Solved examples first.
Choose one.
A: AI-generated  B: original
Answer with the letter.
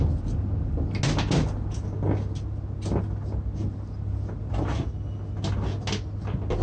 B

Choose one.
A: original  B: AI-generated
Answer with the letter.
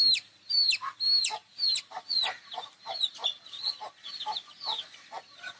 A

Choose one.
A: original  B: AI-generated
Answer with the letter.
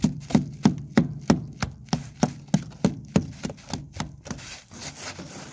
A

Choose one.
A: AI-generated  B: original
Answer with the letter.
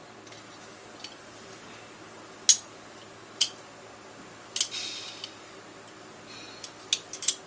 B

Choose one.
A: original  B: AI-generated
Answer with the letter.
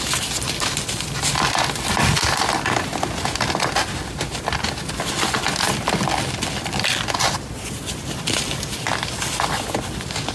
A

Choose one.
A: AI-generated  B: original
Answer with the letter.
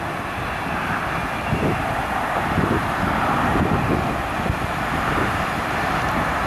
B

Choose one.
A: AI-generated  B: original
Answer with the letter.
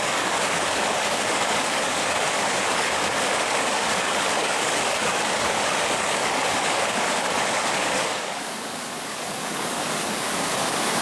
A